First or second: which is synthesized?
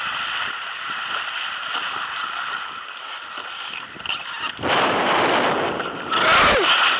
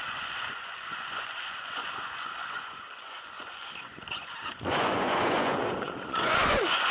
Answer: second